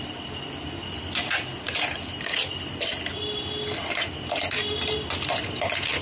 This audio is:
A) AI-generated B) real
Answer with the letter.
B